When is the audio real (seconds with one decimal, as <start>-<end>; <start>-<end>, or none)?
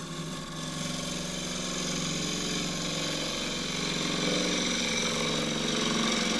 0.0-6.4